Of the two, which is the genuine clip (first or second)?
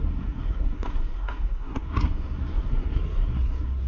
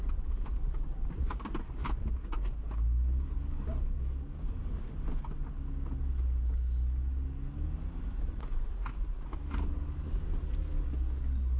second